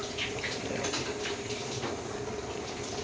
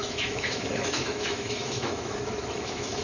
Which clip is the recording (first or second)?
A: first